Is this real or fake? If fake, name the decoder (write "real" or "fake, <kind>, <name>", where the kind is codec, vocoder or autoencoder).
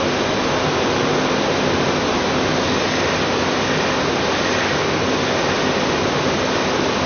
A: real